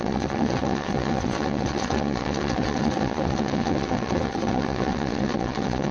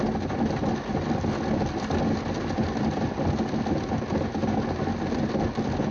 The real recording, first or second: second